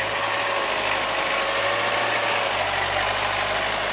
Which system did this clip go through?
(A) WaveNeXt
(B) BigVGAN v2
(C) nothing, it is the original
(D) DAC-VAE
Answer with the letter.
C